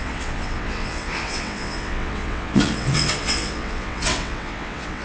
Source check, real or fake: fake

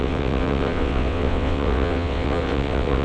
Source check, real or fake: fake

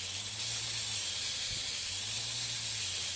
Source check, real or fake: real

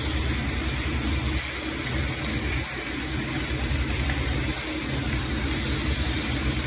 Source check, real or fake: real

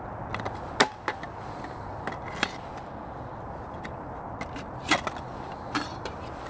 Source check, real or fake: real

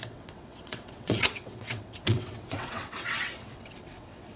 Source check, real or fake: fake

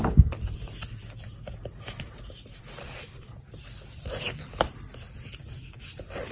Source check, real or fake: real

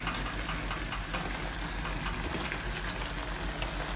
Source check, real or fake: real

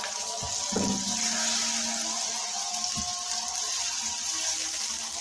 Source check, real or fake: real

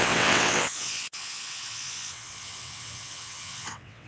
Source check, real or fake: fake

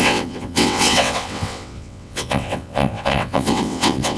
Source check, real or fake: fake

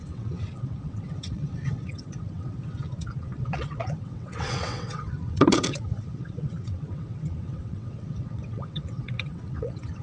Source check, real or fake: fake